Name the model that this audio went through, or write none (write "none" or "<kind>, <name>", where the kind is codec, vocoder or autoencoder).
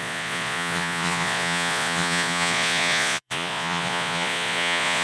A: vocoder, Vocos